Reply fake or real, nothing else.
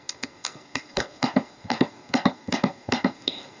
fake